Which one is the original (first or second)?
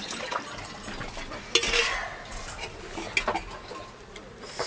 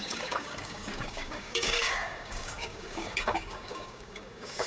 first